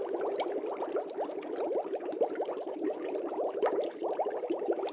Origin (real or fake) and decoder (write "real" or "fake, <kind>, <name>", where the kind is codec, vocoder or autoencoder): real